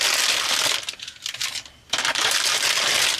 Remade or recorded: recorded